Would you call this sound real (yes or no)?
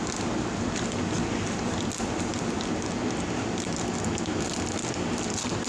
yes